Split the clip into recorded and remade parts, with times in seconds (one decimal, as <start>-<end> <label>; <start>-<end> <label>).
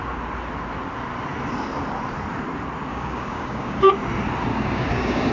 0.0-2.9 recorded; 2.9-3.9 remade; 3.9-4.5 recorded; 4.5-5.3 remade